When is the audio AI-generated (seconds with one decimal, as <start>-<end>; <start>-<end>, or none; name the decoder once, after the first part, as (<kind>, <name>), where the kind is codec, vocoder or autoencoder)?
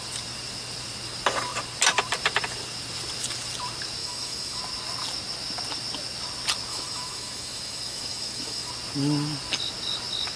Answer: 4.0-4.6 (autoencoder, DAC-VAE); 6.7-8.7